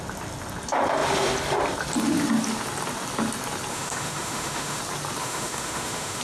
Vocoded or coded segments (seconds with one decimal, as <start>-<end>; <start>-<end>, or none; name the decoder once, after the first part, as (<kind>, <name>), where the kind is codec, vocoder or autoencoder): 3.7-4.8 (autoencoder, DAC-VAE); 5.2-6.2